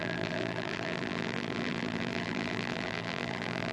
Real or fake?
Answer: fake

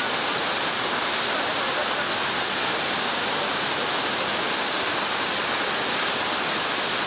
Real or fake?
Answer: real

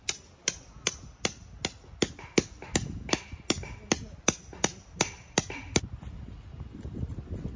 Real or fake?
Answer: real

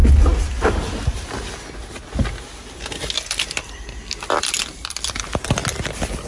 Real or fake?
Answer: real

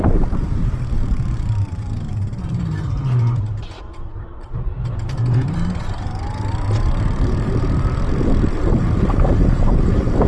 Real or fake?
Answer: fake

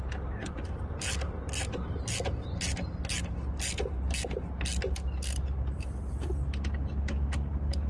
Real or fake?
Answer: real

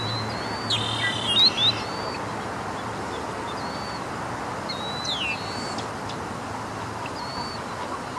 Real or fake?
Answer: real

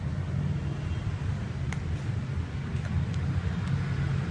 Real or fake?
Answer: real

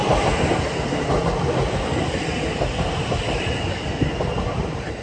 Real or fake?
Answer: real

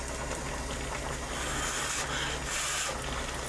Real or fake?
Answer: real